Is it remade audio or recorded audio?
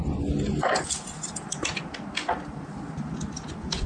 recorded